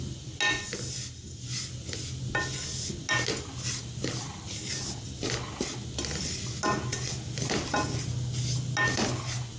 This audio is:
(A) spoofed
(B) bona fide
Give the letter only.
B